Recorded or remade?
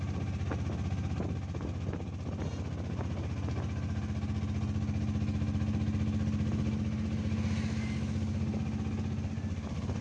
recorded